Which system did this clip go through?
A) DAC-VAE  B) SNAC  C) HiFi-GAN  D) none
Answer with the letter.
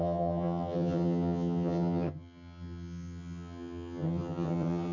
C